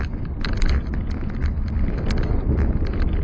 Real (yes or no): yes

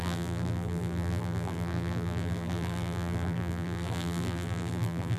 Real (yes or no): no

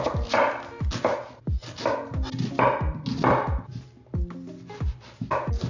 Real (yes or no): yes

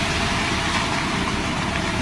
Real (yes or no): no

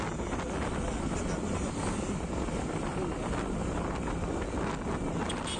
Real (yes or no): yes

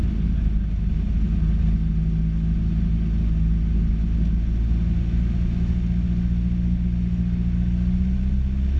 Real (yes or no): yes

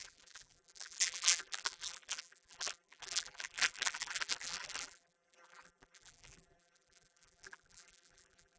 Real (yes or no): no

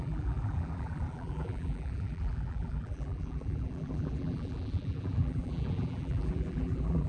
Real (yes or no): no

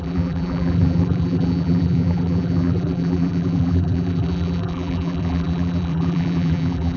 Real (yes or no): no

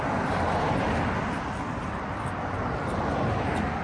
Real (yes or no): no